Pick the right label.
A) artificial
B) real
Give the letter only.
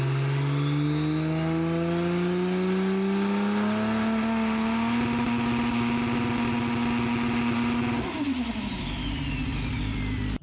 B